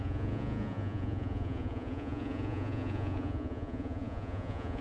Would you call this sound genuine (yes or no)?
no